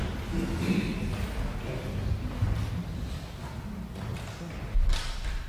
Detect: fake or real real